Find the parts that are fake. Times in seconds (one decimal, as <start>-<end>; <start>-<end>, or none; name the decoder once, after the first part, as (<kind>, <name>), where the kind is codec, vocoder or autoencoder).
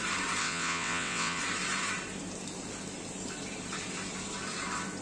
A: 0.4-1.4 (vocoder, WaveNeXt)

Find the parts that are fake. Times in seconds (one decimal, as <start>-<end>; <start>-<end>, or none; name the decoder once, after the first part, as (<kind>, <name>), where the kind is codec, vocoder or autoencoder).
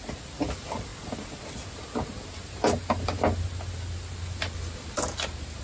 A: none